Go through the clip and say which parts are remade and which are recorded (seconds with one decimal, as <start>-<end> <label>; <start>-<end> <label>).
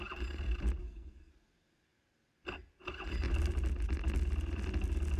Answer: 0.0-0.8 recorded; 0.8-1.3 remade; 1.3-5.2 recorded